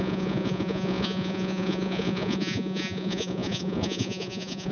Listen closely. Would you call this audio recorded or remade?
remade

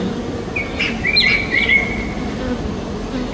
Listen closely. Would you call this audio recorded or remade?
recorded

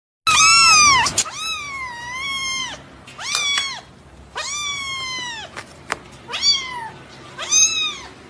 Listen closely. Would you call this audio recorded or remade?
recorded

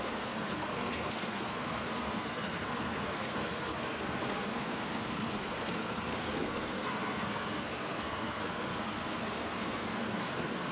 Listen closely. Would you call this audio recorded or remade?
remade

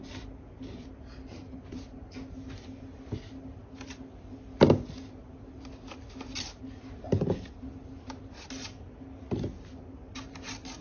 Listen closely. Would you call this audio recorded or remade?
recorded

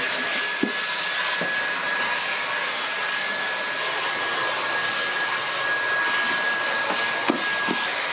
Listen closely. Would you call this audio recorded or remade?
recorded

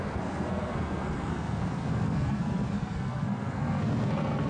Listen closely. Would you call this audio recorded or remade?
remade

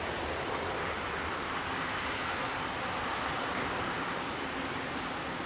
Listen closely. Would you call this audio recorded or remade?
recorded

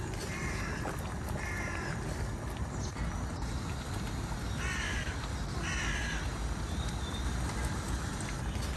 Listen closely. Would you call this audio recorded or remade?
recorded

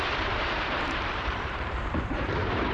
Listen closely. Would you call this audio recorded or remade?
remade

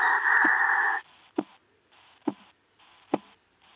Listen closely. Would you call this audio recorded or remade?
recorded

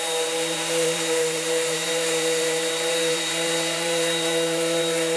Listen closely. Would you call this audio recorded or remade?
remade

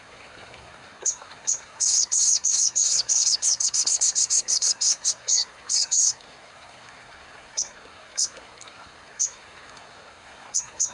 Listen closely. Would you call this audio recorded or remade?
remade